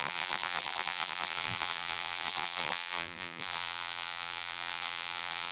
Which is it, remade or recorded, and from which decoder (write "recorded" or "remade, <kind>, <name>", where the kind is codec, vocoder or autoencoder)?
remade, vocoder, BigVGAN v2